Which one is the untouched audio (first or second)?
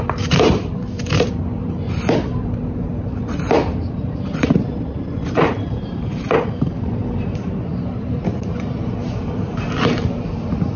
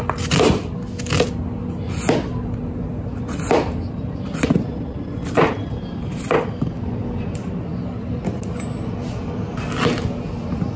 second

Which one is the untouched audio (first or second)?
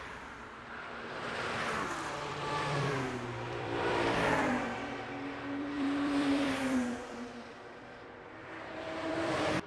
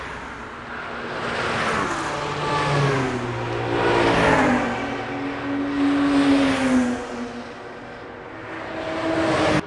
second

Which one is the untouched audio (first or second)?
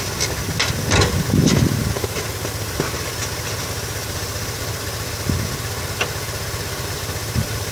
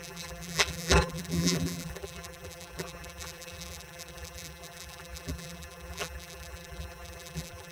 first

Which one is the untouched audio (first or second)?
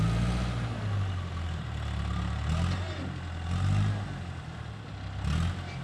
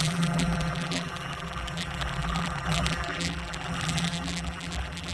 first